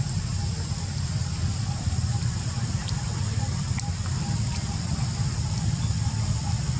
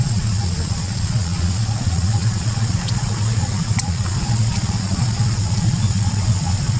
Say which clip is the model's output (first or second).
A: second